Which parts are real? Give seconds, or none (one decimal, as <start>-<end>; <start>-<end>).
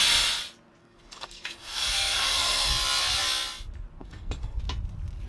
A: 0.0-0.8; 2.7-4.0; 4.6-5.3